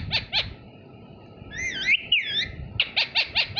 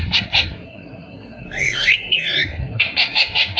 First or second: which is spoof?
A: second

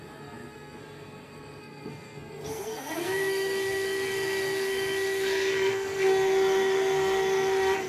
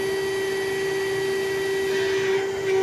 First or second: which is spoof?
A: first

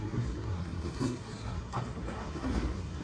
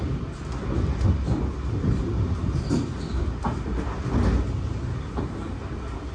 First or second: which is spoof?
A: first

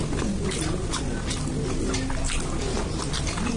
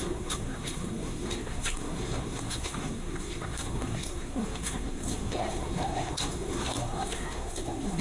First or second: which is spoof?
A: second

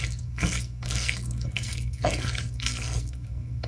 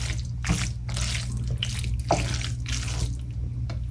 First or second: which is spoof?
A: first